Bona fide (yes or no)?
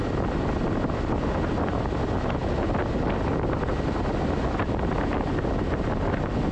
yes